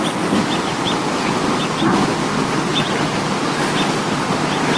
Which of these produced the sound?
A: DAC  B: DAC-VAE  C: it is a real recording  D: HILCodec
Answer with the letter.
C